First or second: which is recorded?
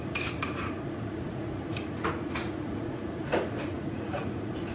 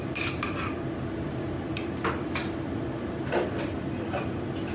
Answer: second